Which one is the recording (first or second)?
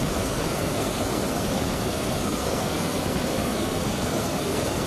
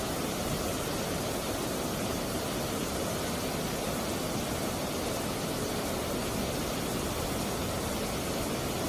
second